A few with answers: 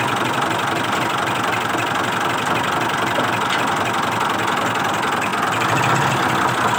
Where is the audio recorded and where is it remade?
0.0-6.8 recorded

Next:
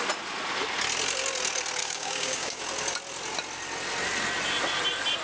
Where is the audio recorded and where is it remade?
0.0-1.8 recorded; 1.8-2.6 remade; 2.6-5.2 recorded